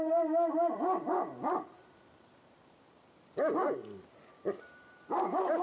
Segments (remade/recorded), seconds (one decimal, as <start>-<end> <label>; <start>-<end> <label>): 0.0-5.6 remade